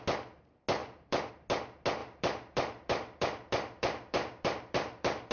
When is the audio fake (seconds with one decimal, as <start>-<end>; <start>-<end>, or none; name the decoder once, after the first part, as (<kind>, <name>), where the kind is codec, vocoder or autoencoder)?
0.8-1.3 (vocoder, BigVGAN v2); 2.0-5.3